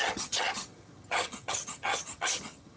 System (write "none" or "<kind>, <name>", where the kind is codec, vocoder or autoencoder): vocoder, HiFi-GAN